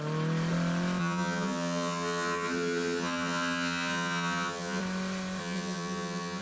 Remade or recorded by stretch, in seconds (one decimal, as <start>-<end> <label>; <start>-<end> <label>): 0.0-1.0 recorded; 1.0-4.8 remade; 4.8-5.4 recorded; 5.4-6.4 remade